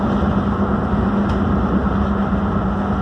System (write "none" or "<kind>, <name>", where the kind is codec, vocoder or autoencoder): none